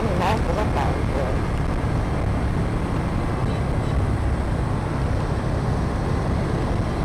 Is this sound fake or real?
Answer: real